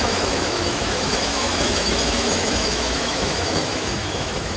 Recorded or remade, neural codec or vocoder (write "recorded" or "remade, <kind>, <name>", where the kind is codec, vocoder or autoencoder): remade, autoencoder, DAC-VAE